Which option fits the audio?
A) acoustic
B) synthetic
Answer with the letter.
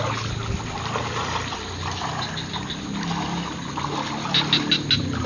A